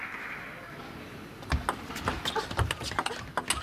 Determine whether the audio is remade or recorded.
recorded